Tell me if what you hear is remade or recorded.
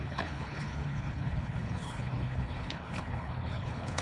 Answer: remade